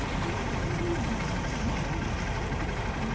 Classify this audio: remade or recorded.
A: recorded